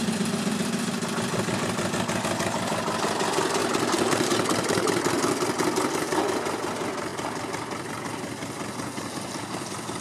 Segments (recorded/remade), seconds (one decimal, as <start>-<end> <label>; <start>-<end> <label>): 0.0-3.6 recorded; 3.6-5.0 remade; 5.0-10.0 recorded